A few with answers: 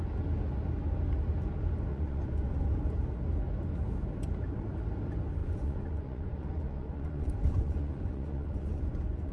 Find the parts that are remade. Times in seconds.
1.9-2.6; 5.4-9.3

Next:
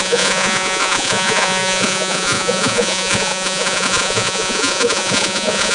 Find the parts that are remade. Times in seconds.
0.0-5.7

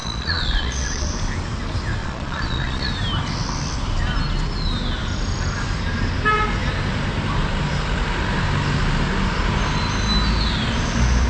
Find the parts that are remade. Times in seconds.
0.0-1.1; 2.0-2.9

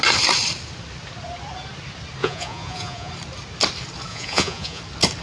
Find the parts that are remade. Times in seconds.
2.2-3.1; 4.1-4.8

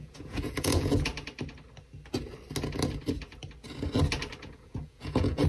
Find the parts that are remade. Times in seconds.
0.0-1.1; 4.4-5.5

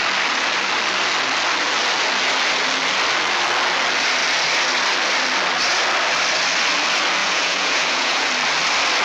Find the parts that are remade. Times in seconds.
7.2-8.3

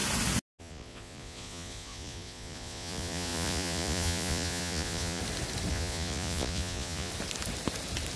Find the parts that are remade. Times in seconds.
0.6-5.2; 5.7-7.1

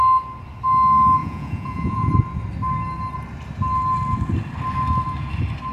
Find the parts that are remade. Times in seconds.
1.2-2.1